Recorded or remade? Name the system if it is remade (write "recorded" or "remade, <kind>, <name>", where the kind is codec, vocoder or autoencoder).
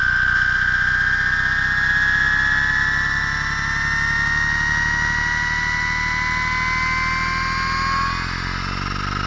recorded